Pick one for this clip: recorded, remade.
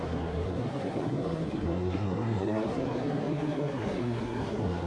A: remade